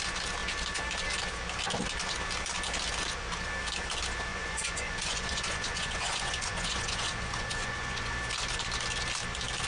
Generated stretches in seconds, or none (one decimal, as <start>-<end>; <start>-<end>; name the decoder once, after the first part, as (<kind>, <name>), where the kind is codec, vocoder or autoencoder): 4.3-8.1 (vocoder, Vocos)